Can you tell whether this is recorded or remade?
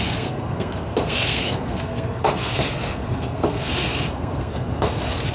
remade